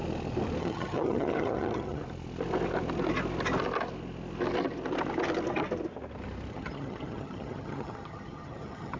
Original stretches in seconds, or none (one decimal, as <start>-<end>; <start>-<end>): 0.0-0.6; 2.0-6.5